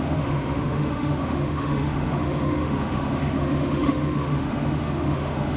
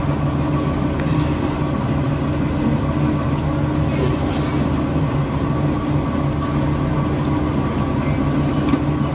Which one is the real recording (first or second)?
second